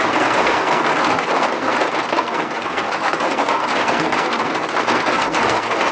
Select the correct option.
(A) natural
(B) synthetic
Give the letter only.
B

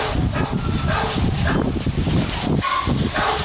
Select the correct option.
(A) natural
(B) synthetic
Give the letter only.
A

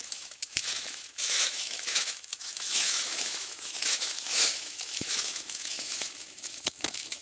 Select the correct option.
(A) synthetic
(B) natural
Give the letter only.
A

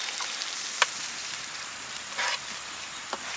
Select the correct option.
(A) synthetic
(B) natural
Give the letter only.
A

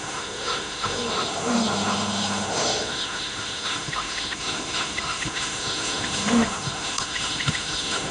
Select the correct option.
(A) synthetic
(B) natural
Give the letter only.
A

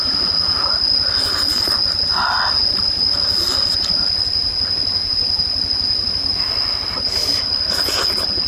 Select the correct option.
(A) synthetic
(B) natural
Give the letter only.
B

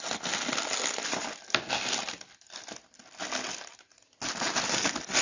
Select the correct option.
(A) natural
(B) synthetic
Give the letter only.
A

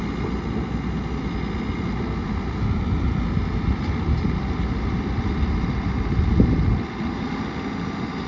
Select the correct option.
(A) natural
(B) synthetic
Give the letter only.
A